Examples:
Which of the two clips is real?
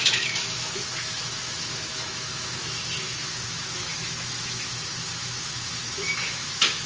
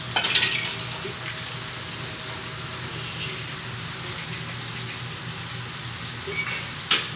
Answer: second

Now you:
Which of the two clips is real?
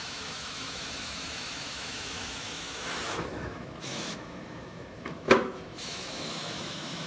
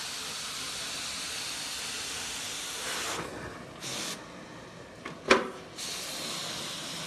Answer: second